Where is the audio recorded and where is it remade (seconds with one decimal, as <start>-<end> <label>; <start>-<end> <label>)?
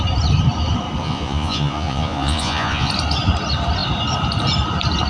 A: 0.0-1.0 recorded; 1.0-2.9 remade; 2.9-5.1 recorded